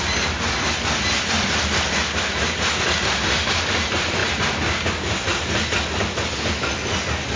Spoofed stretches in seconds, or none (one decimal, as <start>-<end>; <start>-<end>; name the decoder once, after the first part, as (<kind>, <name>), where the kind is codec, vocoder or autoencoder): none